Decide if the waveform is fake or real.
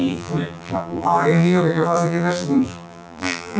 fake